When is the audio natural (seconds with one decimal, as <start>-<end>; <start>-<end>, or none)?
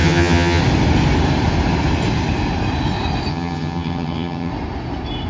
0.6-3.3; 4.5-5.3